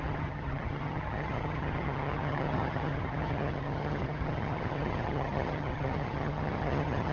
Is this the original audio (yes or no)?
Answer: no